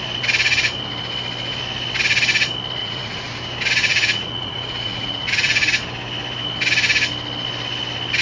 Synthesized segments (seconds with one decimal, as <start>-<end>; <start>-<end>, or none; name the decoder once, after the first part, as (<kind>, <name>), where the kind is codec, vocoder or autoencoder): 2.8-3.3 (vocoder, Vocos); 3.8-5.7